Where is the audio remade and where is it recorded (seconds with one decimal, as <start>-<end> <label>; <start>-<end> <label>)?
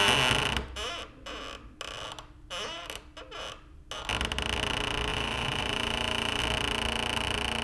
0.0-5.1 recorded; 5.1-6.4 remade; 6.4-7.6 recorded